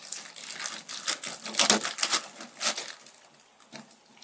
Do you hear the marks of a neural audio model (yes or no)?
no